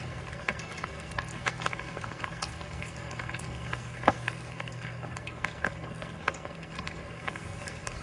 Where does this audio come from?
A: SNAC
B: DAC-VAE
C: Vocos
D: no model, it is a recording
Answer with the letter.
A